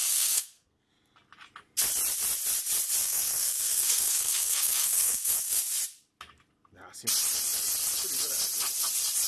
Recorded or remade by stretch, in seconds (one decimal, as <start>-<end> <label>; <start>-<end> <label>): 0.0-0.9 remade; 0.9-3.0 recorded; 3.0-5.6 remade; 5.6-9.3 recorded